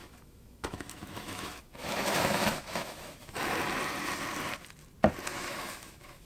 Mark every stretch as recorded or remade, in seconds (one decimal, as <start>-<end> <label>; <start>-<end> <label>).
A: 0.0-3.4 remade; 3.4-5.3 recorded; 5.3-6.3 remade